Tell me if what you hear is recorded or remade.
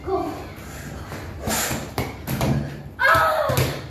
recorded